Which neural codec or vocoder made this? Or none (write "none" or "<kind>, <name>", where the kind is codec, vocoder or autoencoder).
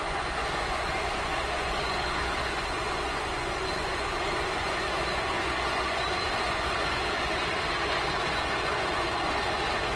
vocoder, Vocos